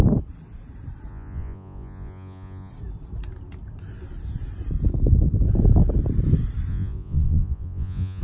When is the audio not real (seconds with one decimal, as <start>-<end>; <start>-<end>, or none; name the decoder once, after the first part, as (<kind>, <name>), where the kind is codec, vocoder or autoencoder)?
1.1-2.7 (vocoder, Vocos); 6.7-8.2